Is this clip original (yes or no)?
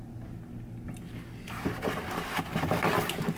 yes